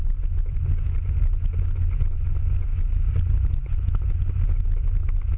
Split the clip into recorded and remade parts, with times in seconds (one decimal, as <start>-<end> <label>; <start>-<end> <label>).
0.0-5.4 recorded